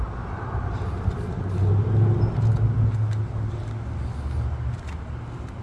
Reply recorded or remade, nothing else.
recorded